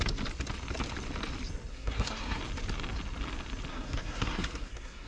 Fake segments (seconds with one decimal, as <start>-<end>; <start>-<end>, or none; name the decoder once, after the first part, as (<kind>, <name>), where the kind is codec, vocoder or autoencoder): 1.7-2.4 (codec, SNAC); 3.7-5.1

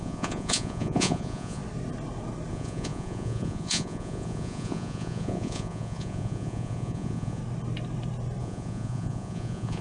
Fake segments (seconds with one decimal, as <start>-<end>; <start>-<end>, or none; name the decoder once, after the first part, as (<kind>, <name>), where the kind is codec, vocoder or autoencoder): 0.0-1.6 (vocoder, Vocos); 2.5-7.4; 8.4-9.8

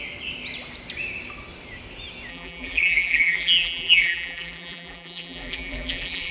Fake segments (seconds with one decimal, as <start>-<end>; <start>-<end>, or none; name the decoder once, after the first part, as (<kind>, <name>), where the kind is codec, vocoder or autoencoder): 2.3-6.3 (vocoder, BigVGAN v2)

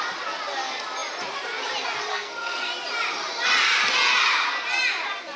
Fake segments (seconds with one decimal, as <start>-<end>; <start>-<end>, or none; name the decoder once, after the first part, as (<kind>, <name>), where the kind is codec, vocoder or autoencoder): 2.1-2.7 (codec, SNAC)

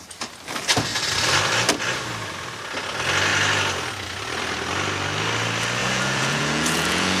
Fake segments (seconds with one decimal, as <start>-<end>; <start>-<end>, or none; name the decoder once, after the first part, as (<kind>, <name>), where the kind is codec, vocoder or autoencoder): 5.8-7.2 (vocoder, Vocos)

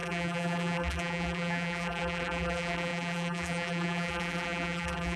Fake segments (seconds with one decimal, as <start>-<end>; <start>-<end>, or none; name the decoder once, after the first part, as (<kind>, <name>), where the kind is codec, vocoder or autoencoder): 0.0-5.2 (vocoder, BigVGAN v2)

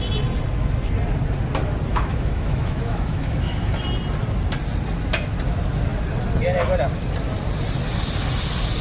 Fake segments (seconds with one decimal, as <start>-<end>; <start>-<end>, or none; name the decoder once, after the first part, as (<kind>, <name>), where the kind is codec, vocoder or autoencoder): 1.9-3.8 (autoencoder, DAC-VAE)

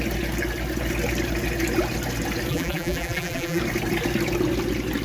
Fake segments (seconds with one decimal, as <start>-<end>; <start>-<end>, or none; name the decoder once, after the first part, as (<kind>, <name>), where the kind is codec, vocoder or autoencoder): 2.5-3.6 (vocoder, BigVGAN v2)